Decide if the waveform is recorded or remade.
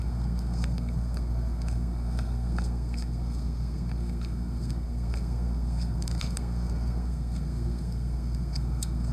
remade